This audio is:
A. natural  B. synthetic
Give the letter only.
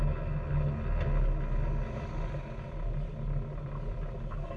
A